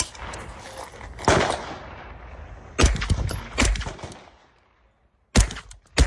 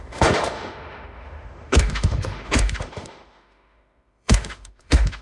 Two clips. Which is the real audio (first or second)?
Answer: first